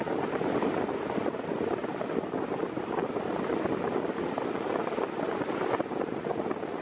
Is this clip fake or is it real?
real